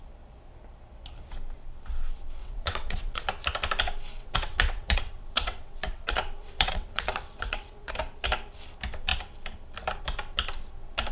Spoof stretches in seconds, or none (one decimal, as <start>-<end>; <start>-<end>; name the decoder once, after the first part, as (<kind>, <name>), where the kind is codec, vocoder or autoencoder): 2.4-3.3 (vocoder, WaveNeXt); 4.2-7.9